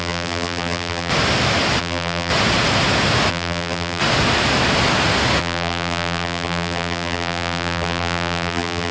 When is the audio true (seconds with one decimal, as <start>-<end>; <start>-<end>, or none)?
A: 1.1-1.8; 2.3-3.3; 4.0-5.4